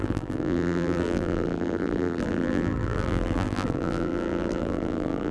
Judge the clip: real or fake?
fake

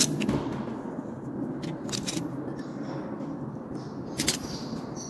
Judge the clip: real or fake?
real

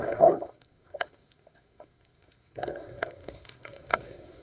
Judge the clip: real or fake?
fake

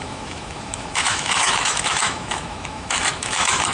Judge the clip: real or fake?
fake